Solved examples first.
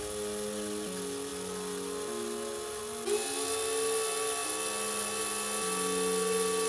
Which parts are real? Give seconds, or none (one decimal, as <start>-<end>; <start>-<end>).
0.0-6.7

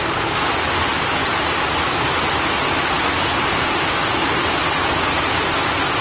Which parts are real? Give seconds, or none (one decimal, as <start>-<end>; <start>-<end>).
0.0-6.0

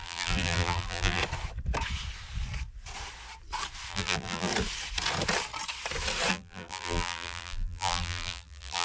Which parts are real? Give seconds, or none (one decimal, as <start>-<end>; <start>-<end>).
1.2-3.9; 4.5-6.3